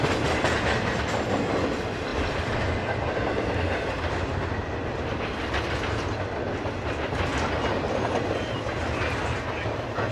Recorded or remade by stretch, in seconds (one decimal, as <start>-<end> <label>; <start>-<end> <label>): 0.0-10.1 recorded